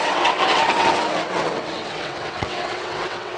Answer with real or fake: fake